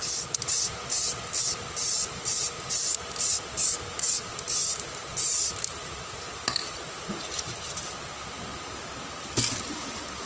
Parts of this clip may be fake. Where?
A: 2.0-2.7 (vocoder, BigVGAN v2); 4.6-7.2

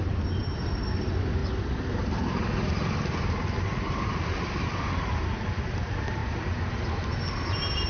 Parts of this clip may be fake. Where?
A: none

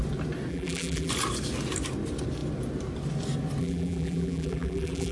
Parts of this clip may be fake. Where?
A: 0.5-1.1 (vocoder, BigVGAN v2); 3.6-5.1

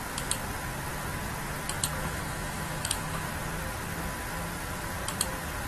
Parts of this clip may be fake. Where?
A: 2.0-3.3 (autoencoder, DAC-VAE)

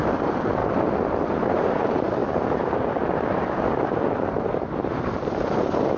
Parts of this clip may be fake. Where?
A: 0.0-0.6 (vocoder, BigVGAN v2); 1.4-6.0

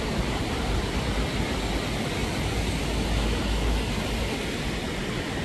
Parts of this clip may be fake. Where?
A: none